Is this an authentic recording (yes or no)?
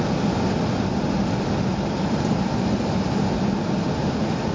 yes